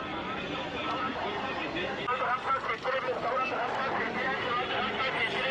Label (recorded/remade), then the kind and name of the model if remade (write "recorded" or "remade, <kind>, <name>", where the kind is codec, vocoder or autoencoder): recorded